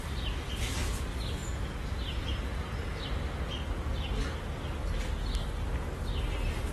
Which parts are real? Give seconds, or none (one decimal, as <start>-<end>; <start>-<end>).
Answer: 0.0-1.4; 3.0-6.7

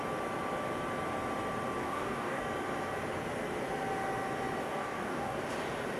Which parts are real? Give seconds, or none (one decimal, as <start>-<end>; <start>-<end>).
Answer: 0.0-1.8; 2.4-4.6; 5.4-6.0

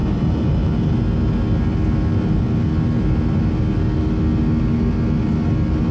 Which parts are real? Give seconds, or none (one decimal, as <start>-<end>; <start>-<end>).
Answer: 0.5-5.9

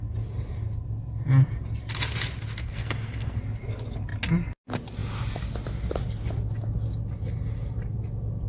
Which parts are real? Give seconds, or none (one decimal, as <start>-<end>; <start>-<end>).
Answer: 0.0-2.6; 3.4-8.5